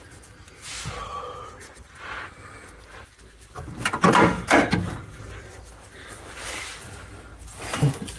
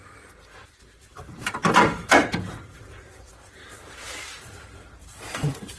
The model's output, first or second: second